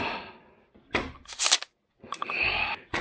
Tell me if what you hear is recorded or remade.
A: recorded